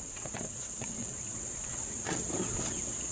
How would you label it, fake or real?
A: fake